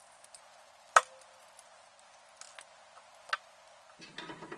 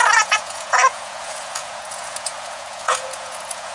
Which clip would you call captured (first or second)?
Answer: first